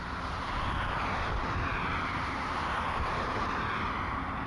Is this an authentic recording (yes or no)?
yes